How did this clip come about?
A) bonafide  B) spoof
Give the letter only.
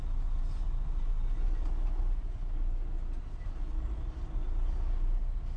A